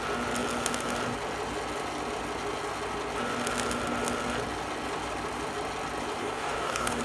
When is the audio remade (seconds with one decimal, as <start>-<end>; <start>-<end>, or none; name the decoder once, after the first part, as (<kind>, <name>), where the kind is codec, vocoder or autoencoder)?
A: 6.2-7.0 (codec, DAC)